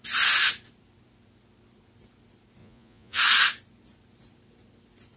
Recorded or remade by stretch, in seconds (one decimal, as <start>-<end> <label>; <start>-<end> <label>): 0.0-2.6 recorded; 2.6-3.2 remade; 3.2-5.2 recorded